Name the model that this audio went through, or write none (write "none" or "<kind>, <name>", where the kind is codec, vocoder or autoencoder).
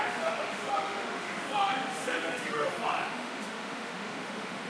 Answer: autoencoder, DAC-VAE